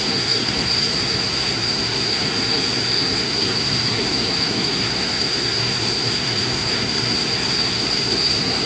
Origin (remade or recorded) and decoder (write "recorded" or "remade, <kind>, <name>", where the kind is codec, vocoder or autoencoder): remade, codec, SNAC